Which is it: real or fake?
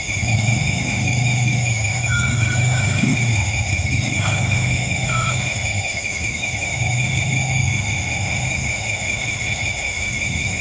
fake